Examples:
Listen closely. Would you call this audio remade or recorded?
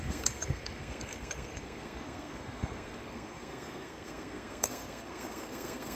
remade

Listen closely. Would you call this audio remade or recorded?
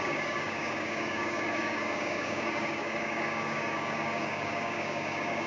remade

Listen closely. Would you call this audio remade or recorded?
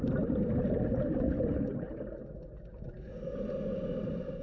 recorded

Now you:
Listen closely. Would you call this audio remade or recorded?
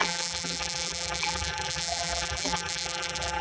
remade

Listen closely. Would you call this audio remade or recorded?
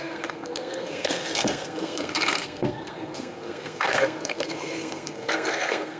remade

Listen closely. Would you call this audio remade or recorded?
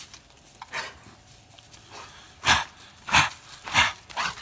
recorded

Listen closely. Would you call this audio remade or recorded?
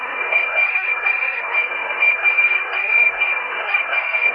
remade